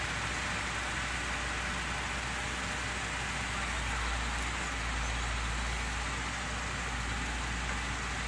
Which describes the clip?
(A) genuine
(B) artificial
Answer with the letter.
A